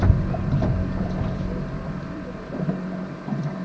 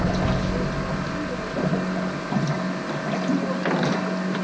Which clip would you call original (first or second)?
second